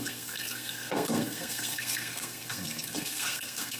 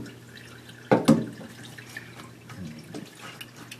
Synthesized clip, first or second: first